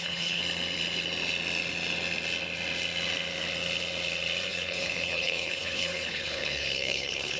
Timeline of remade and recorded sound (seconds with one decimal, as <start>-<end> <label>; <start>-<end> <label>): 0.0-0.4 remade; 0.4-4.5 recorded; 4.5-7.4 remade